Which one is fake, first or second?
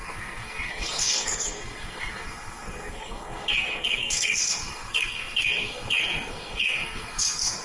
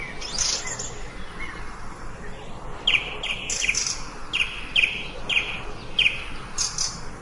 first